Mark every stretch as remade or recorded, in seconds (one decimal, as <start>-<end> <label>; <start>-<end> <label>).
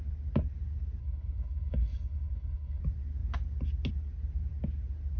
0.0-1.0 recorded; 1.0-2.8 remade; 2.8-5.2 recorded